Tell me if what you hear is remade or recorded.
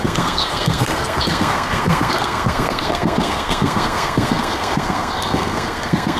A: remade